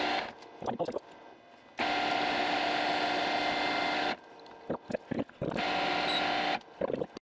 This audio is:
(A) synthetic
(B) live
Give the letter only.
B